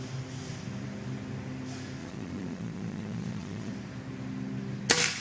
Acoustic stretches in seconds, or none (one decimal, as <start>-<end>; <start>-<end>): 0.0-2.0; 3.7-5.2